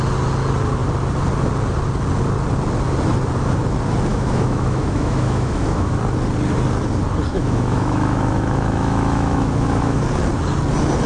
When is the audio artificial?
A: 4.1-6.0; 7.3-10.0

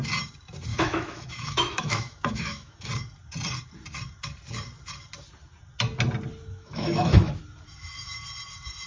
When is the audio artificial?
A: 0.7-2.9; 6.4-7.4

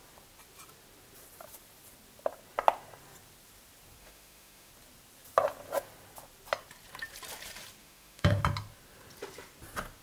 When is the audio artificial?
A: 4.0-4.7; 7.8-8.4

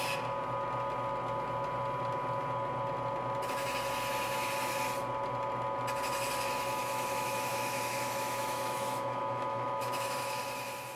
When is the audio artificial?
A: 6.8-10.4